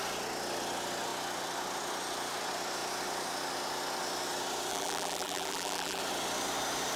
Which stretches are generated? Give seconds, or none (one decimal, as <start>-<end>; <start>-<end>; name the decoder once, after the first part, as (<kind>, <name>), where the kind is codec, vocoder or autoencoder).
4.7-6.0 (vocoder, BigVGAN v2)